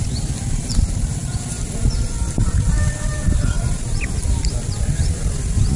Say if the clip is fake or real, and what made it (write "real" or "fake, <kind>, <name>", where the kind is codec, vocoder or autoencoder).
real